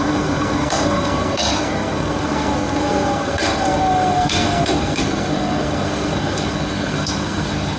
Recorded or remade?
remade